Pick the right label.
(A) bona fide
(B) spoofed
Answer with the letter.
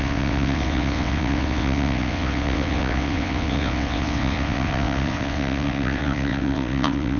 B